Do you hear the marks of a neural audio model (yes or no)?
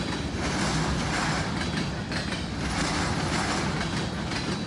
no